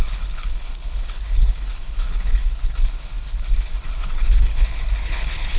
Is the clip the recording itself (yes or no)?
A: no